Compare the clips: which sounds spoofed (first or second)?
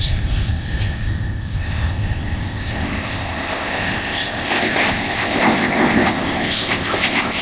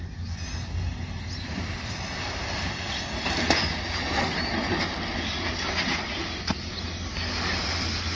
first